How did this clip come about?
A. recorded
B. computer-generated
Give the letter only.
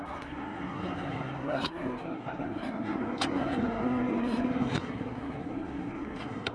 B